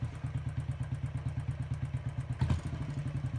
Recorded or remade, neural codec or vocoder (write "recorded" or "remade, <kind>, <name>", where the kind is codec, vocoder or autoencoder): recorded